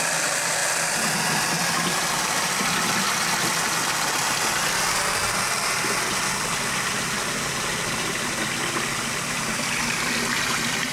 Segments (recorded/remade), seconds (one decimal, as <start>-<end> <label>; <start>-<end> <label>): 0.0-10.9 recorded